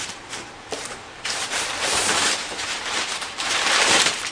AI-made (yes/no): yes